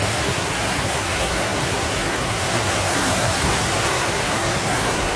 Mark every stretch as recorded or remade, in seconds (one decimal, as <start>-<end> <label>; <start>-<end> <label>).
0.0-5.2 remade